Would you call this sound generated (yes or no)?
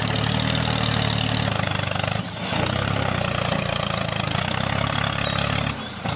no